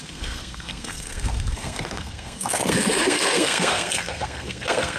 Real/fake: fake